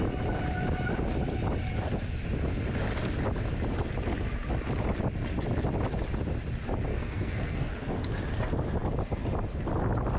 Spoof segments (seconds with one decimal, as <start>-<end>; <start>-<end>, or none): 6.9-7.7